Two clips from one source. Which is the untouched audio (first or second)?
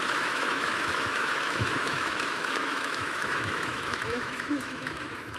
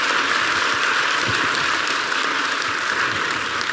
second